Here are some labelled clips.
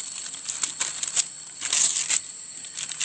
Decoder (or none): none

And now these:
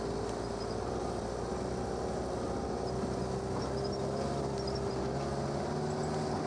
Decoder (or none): none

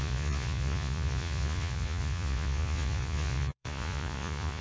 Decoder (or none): vocoder, Vocos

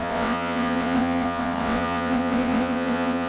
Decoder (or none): vocoder, WaveNeXt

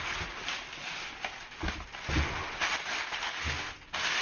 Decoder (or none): none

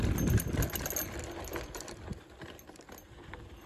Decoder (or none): none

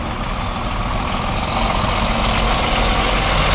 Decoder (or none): none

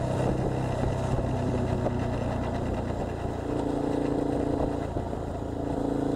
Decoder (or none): none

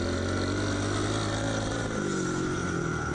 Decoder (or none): none